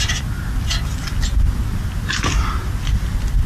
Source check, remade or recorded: recorded